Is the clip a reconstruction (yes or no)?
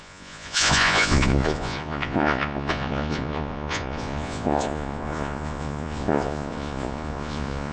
yes